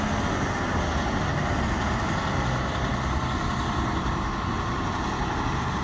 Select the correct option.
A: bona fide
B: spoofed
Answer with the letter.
A